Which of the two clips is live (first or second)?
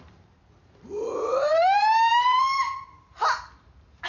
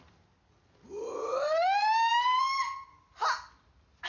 second